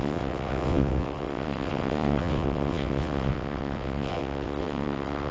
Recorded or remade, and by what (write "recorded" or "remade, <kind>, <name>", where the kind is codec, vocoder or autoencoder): remade, vocoder, WaveNeXt